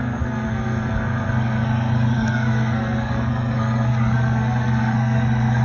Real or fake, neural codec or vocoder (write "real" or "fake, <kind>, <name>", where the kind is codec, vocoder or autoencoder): fake, codec, SNAC